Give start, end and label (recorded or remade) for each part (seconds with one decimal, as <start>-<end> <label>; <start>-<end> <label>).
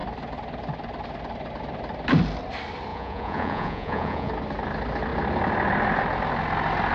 0.0-2.9 recorded; 2.9-4.3 remade; 4.3-6.9 recorded